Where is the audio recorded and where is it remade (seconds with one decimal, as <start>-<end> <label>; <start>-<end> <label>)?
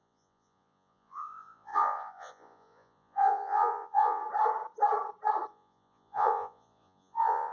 0.0-4.2 remade; 4.2-5.5 recorded; 5.5-7.5 remade